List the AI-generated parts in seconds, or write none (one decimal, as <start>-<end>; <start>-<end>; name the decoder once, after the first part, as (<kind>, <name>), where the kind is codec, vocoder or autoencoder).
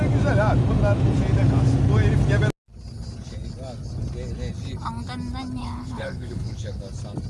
5.6-6.8 (codec, HILCodec)